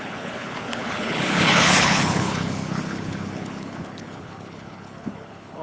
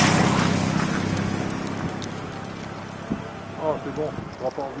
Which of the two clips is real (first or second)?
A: second